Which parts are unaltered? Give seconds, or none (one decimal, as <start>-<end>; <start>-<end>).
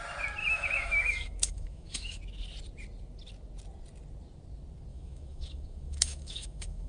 0.0-0.4; 2.2-4.9